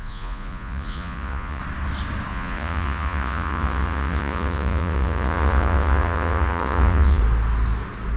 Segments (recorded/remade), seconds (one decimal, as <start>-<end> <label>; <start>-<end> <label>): 0.0-1.6 remade; 1.6-2.3 recorded; 2.3-7.2 remade; 7.2-8.2 recorded

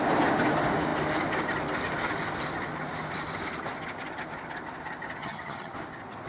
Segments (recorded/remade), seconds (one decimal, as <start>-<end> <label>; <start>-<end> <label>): 0.0-5.2 recorded; 5.2-5.7 remade; 5.7-6.3 recorded

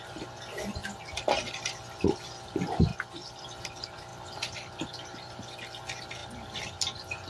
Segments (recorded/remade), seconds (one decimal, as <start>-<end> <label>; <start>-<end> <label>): 0.0-0.8 recorded; 0.8-2.5 remade; 2.5-2.9 recorded; 2.9-3.4 remade; 3.4-4.1 recorded; 4.1-4.8 remade; 4.8-6.2 recorded; 6.2-6.8 remade; 6.8-7.3 recorded